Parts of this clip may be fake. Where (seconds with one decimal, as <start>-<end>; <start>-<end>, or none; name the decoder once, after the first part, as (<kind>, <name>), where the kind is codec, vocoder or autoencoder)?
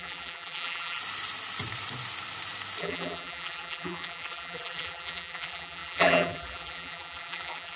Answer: 0.0-1.0 (vocoder, BigVGAN v2); 2.8-7.8